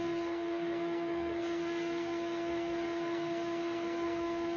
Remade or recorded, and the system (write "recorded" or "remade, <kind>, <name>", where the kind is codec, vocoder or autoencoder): remade, codec, SNAC